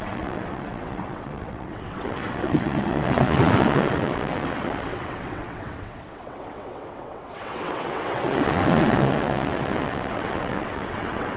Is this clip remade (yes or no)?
yes